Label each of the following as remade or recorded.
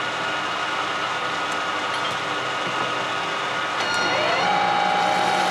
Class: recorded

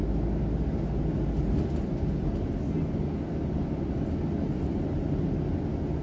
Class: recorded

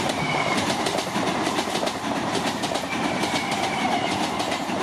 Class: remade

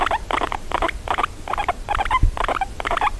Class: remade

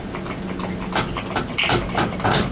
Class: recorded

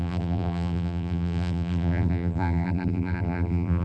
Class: remade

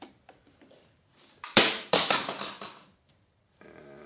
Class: remade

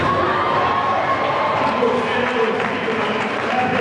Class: remade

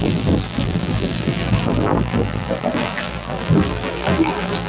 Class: remade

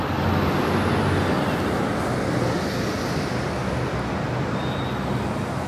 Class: recorded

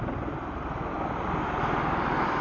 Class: remade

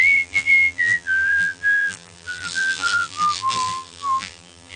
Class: remade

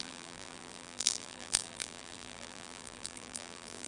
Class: remade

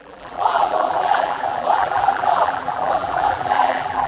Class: remade